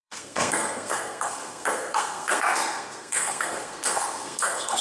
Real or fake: fake